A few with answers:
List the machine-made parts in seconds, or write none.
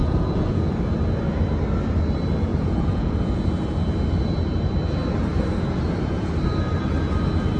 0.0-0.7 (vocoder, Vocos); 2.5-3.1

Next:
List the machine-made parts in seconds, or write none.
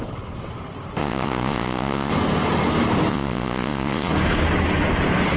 1.0-2.1 (vocoder, Vocos); 3.1-4.1